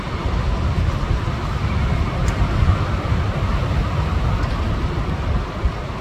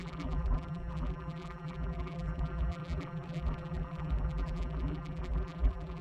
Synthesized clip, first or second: second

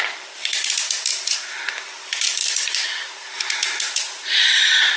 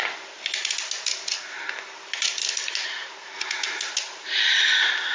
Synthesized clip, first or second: first